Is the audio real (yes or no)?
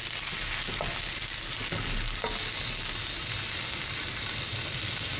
yes